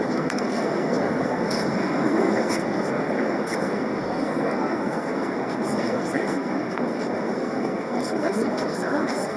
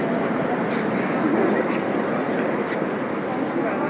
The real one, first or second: second